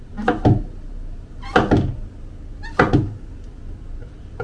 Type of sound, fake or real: real